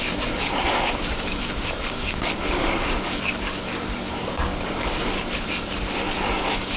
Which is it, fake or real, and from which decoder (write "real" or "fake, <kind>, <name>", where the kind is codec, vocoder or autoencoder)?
fake, codec, DAC